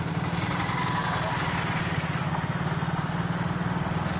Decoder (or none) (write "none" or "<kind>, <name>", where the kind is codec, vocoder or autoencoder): none